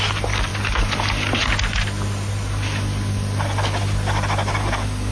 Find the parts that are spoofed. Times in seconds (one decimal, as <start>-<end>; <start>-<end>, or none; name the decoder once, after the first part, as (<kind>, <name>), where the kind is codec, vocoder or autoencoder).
none